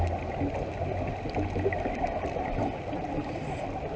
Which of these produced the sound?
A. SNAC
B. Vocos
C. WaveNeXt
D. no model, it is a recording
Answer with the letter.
D